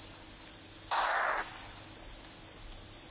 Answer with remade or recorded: recorded